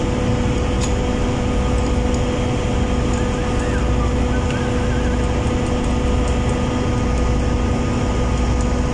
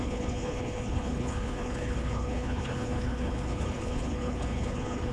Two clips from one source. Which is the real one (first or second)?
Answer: first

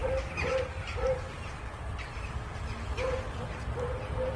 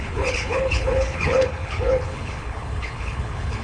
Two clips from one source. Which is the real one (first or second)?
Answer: first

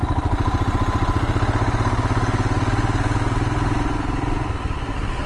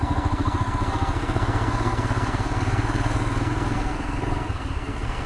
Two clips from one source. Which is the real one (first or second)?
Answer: first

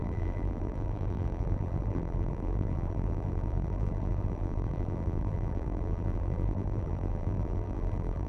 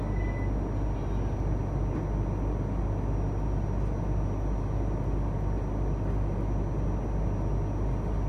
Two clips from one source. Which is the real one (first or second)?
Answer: second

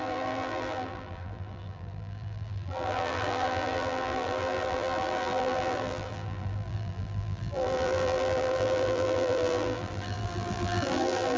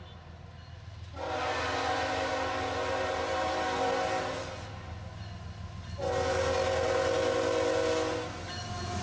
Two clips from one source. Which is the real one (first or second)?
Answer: second